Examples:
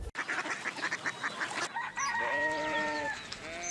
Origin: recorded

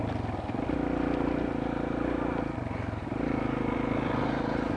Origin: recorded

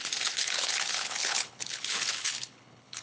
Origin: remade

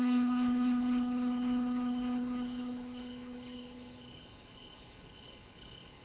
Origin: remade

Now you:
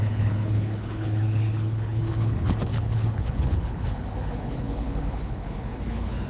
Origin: remade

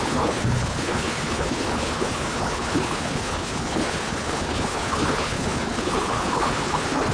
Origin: remade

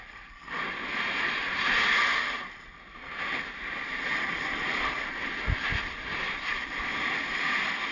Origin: recorded